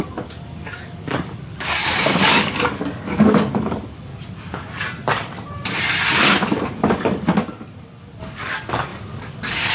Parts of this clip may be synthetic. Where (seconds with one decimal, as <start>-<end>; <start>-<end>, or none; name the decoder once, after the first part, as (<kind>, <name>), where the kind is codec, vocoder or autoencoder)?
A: 0.0-4.1 (codec, DAC); 6.9-7.4; 8.2-9.7